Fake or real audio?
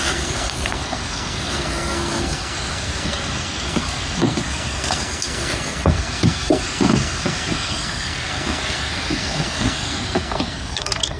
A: fake